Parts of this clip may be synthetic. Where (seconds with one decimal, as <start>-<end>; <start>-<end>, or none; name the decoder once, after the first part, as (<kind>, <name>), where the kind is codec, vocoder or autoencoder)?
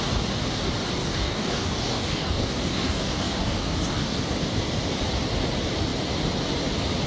1.0-4.2 (codec, DAC)